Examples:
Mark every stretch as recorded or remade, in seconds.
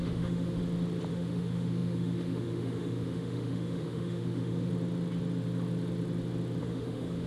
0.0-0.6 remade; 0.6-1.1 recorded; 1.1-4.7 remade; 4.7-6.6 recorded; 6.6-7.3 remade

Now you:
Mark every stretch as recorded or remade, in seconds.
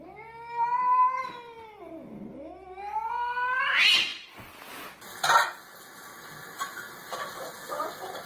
0.0-8.3 recorded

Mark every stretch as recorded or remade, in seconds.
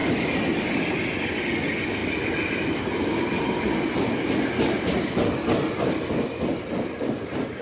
0.0-0.6 remade; 0.6-2.0 recorded; 2.0-4.8 remade; 4.8-7.6 recorded